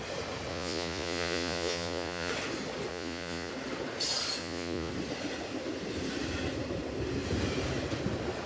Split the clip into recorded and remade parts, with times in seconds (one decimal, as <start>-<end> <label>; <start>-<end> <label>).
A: 0.0-0.5 recorded; 0.5-2.3 remade; 2.3-2.9 recorded; 2.9-3.5 remade; 3.5-4.4 recorded; 4.4-4.9 remade; 4.9-8.5 recorded

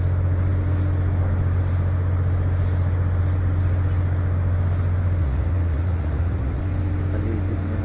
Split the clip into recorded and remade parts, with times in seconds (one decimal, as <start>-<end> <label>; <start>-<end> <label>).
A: 0.0-5.2 recorded; 5.2-6.6 remade; 6.6-7.8 recorded

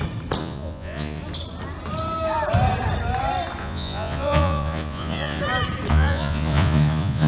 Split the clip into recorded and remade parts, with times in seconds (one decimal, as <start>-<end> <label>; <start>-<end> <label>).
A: 0.0-0.4 recorded; 0.4-1.2 remade; 1.2-3.6 recorded; 3.6-5.4 remade; 5.4-5.9 recorded; 5.9-7.3 remade

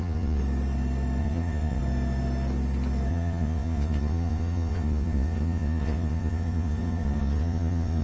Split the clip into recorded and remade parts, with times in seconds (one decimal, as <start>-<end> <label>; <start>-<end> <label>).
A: 0.0-0.4 remade; 0.4-1.2 recorded; 1.2-1.8 remade; 1.8-3.1 recorded; 3.1-8.0 remade

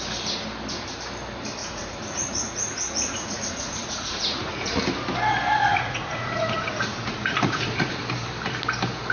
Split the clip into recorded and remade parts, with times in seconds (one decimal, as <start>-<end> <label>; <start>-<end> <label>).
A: 0.0-1.6 recorded; 1.6-4.7 remade; 4.7-5.7 recorded; 5.7-8.0 remade; 8.0-9.1 recorded

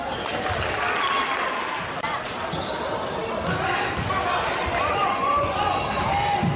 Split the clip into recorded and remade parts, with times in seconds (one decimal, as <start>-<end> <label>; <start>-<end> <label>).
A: 0.0-5.0 recorded; 5.0-5.8 remade; 5.8-6.6 recorded

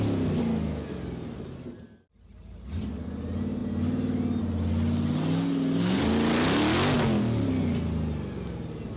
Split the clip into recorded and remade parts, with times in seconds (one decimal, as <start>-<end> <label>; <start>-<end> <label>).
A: 0.0-9.0 recorded